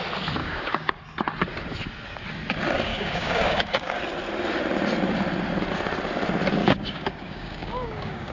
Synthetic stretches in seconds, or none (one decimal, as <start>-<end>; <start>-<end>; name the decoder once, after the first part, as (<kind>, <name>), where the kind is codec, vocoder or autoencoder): 0.4-0.9 (codec, DAC); 2.9-4.0; 6.6-8.3